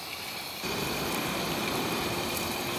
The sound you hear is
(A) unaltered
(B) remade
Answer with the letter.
B